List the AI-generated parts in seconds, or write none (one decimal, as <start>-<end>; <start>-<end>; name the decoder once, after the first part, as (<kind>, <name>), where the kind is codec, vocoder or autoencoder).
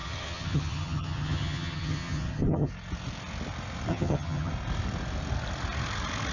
0.0-2.7 (vocoder, HiFi-GAN); 3.9-4.5